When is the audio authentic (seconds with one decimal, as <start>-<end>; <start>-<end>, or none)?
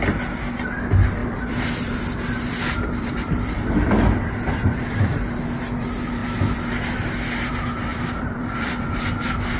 0.0-1.2; 3.9-7.9; 9.0-9.6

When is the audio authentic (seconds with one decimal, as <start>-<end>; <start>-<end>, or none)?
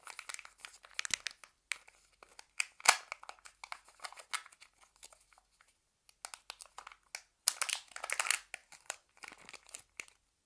0.0-8.6; 9.1-10.5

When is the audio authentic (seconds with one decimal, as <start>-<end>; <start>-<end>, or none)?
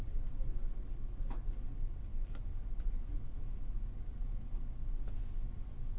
0.0-6.0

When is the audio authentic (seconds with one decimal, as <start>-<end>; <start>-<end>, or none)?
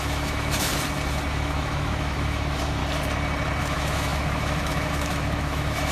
0.7-1.3; 2.8-3.6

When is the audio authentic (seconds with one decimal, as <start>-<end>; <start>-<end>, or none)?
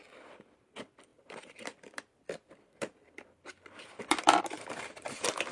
0.0-1.1; 4.4-5.5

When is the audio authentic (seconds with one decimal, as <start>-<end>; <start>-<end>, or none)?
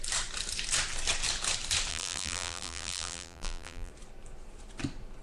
0.0-1.9; 3.9-5.2